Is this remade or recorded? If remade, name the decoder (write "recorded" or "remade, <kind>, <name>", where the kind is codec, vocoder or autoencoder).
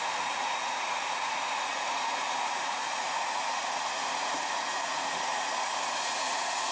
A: remade, vocoder, Vocos